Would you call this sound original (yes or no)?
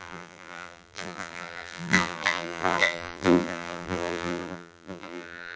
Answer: no